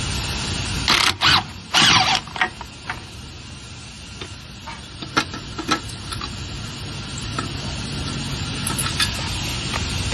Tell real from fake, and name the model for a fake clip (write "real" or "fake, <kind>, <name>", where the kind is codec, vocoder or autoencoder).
real